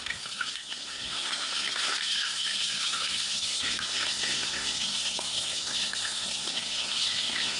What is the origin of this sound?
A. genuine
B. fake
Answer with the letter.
B